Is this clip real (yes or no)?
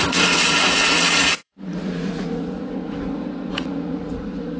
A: no